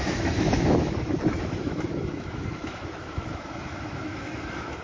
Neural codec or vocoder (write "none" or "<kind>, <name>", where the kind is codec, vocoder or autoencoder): autoencoder, DAC-VAE